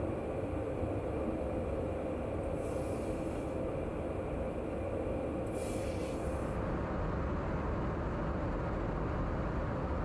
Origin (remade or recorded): recorded